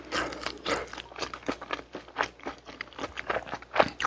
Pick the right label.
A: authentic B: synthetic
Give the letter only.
A